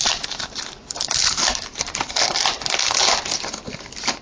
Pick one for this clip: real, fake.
real